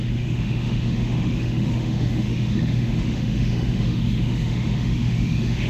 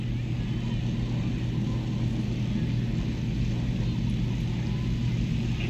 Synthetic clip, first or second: first